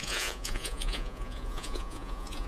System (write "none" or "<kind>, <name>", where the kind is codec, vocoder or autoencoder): vocoder, Vocos